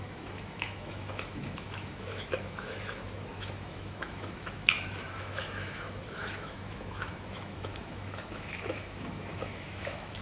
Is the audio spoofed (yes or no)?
yes